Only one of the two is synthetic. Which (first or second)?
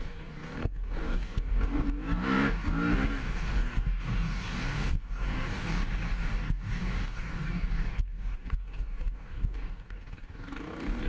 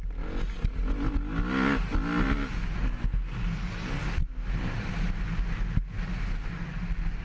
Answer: first